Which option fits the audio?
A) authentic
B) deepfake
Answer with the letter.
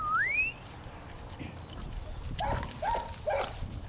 A